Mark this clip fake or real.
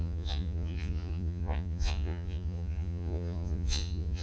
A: fake